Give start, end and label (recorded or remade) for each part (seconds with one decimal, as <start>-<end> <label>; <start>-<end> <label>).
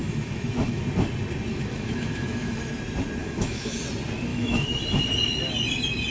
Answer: 0.0-0.8 remade; 0.8-1.5 recorded; 1.5-2.7 remade; 2.7-3.2 recorded; 3.2-3.8 remade; 3.8-4.3 recorded; 4.3-4.8 remade; 4.8-6.1 recorded